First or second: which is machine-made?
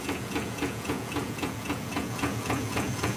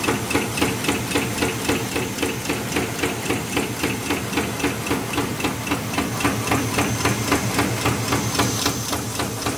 first